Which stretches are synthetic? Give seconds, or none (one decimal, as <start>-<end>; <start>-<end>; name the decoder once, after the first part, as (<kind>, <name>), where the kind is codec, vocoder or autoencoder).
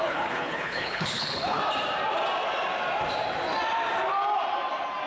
0.0-1.6 (codec, HILCodec)